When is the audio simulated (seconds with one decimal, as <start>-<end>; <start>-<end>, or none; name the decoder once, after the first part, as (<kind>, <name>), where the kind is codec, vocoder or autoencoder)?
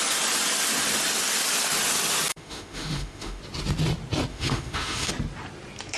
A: 2.3-3.4 (autoencoder, DAC-VAE); 4.3-5.1